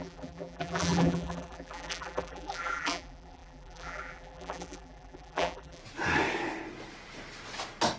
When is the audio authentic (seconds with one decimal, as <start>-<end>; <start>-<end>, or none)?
5.8-8.0